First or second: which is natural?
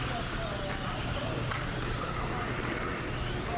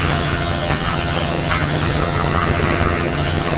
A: first